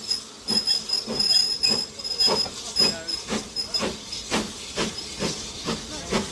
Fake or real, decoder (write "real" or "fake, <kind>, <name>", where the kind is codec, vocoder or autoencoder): real